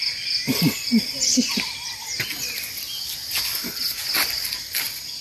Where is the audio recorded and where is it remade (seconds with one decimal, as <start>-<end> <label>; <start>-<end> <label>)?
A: 0.0-1.2 recorded; 1.2-3.0 remade; 3.0-5.2 recorded